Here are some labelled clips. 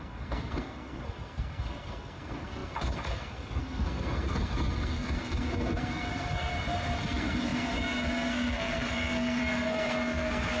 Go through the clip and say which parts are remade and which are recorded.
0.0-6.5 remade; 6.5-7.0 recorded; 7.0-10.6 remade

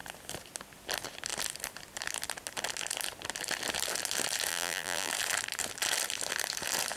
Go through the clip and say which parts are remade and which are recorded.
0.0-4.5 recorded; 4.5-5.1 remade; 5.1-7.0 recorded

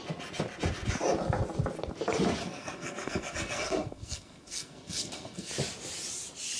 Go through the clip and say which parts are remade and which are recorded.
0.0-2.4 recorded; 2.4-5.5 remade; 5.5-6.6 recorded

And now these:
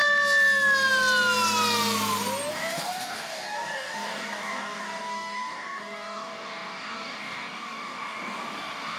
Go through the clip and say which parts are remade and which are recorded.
0.0-2.5 recorded; 2.5-9.0 remade

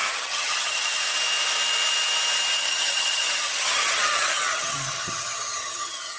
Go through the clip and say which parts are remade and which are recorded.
0.0-1.0 remade; 1.0-2.6 recorded; 2.6-6.2 remade